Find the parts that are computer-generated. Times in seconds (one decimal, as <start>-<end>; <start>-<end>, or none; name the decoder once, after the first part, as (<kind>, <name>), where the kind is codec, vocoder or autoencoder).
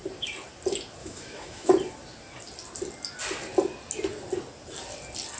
1.0-1.7 (autoencoder, DAC-VAE)